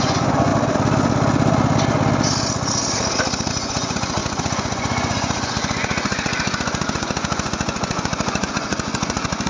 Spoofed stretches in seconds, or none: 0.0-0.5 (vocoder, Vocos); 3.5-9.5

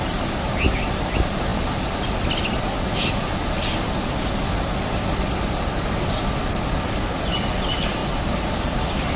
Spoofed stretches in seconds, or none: none